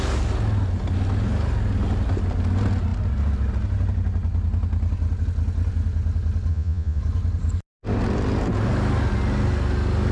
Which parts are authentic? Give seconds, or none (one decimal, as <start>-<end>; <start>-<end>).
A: 0.0-6.5; 7.0-10.1